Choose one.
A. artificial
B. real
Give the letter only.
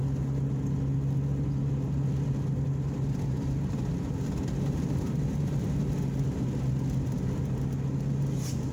B